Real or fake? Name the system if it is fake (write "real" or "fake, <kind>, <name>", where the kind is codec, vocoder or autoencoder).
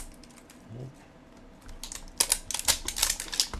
real